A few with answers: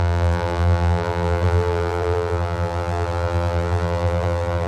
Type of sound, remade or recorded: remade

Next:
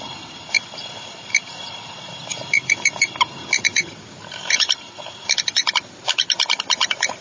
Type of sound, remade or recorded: remade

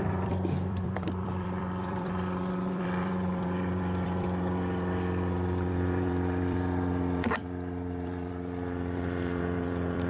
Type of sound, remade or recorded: remade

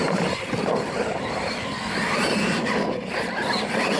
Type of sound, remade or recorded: recorded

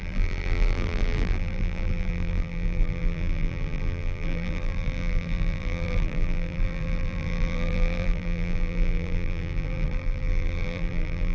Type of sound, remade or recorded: remade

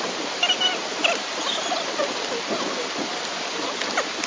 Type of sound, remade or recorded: recorded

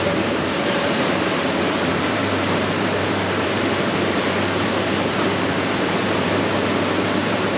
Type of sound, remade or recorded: remade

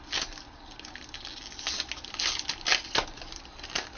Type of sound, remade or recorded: recorded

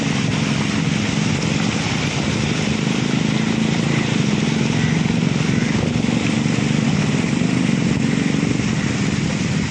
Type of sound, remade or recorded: recorded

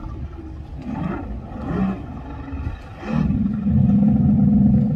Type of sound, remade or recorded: recorded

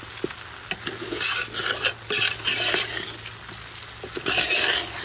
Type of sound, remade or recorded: recorded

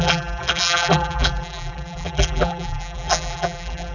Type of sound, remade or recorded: remade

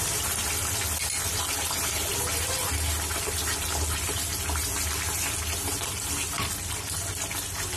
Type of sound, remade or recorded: recorded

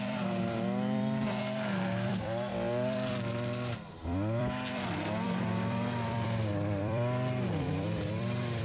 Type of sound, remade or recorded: remade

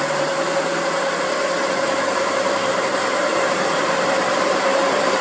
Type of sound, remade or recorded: remade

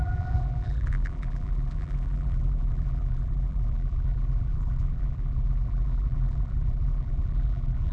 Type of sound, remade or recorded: remade